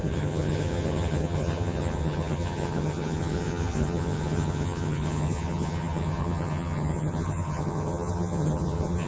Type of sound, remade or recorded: remade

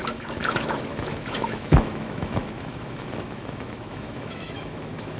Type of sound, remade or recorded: remade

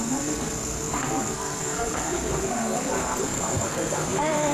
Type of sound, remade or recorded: remade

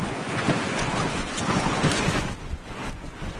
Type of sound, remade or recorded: remade